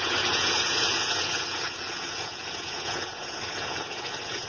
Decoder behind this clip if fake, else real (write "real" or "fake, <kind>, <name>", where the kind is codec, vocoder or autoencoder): fake, vocoder, Vocos